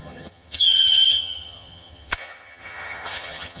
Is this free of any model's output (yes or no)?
no